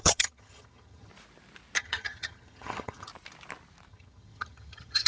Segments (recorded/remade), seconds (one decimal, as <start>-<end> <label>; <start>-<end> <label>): 0.0-1.1 remade; 1.1-1.8 recorded; 1.8-3.1 remade; 3.1-3.9 recorded; 3.9-5.1 remade